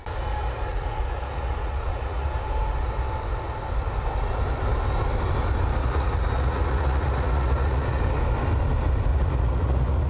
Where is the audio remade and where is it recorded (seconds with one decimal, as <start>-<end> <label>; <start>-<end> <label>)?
0.0-0.7 recorded; 0.7-2.3 remade; 2.3-5.8 recorded; 5.8-8.0 remade; 8.0-9.1 recorded; 9.1-10.1 remade